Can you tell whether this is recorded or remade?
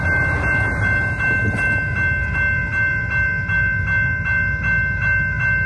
recorded